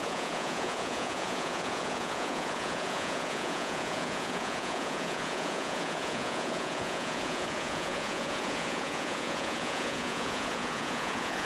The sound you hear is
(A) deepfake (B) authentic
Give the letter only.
A